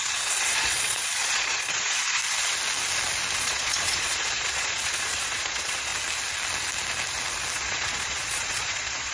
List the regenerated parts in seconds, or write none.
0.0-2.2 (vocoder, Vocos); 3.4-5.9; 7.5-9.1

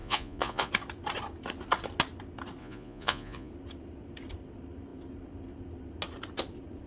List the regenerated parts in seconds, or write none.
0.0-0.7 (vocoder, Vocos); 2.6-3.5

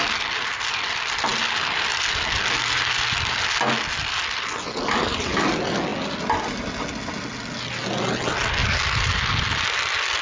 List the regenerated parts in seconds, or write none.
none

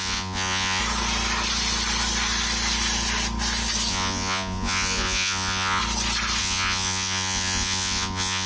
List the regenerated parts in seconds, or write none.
0.0-0.8 (vocoder, Vocos); 3.9-5.8; 6.4-8.5